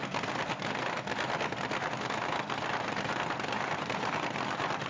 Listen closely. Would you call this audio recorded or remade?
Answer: recorded